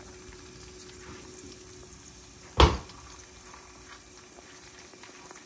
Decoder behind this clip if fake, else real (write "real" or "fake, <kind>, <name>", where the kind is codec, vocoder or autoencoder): real